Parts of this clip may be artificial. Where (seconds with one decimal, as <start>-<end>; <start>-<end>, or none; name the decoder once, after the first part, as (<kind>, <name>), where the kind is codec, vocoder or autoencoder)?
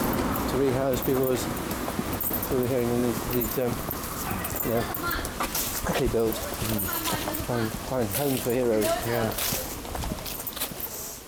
3.0-3.7 (vocoder, Vocos)